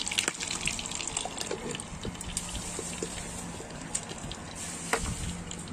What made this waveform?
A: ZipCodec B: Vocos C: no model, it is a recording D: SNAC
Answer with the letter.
C